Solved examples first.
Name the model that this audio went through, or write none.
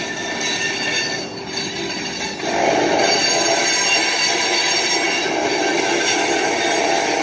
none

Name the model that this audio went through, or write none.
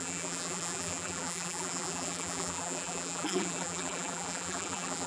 vocoder, BigVGAN v2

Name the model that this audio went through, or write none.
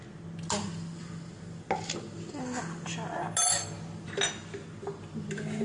none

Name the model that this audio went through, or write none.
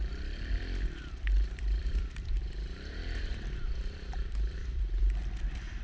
vocoder, BigVGAN v2